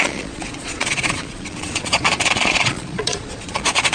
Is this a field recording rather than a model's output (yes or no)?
no